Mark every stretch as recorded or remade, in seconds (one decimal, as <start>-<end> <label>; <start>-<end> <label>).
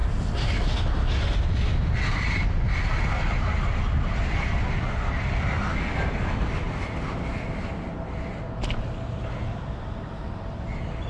0.0-11.1 recorded